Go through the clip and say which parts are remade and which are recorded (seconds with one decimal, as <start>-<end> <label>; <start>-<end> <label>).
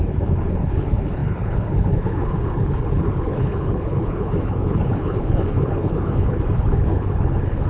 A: 0.0-7.7 remade